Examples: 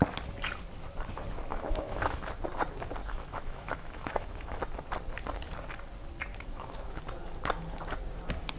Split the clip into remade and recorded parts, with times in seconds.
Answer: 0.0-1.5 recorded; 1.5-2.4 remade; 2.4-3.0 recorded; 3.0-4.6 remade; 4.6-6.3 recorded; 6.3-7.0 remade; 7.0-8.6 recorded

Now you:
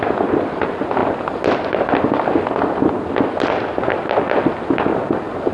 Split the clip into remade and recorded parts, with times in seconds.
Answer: 0.0-5.5 recorded

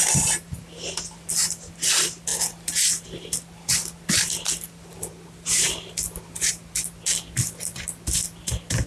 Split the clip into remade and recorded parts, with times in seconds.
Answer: 0.0-8.9 recorded

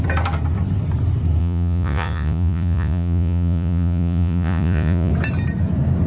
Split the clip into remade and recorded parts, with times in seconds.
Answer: 0.0-1.4 recorded; 1.4-5.1 remade; 5.1-6.1 recorded

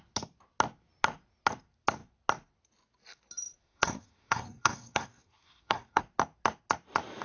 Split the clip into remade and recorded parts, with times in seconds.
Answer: 0.0-3.6 recorded; 3.6-6.0 remade; 6.0-7.2 recorded

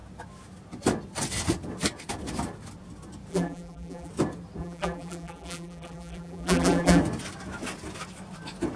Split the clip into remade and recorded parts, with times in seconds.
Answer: 0.0-3.3 recorded; 3.3-4.1 remade; 4.1-4.6 recorded; 4.6-7.0 remade; 7.0-8.8 recorded

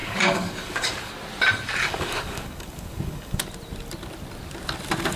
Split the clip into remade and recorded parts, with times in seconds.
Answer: 0.0-1.1 remade; 1.1-1.8 recorded; 1.8-3.4 remade; 3.4-5.2 recorded

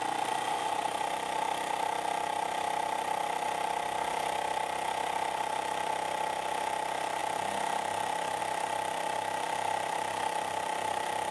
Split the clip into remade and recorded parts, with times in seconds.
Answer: 0.0-11.3 recorded